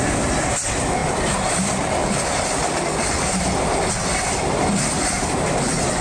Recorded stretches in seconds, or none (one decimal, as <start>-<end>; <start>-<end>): 0.0-6.0